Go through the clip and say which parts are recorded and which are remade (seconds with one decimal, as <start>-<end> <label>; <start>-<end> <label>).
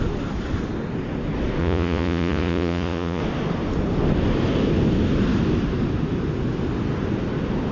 0.0-1.6 recorded; 1.6-3.2 remade; 3.2-7.7 recorded